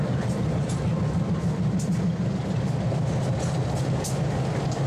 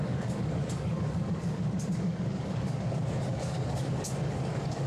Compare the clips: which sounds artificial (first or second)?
second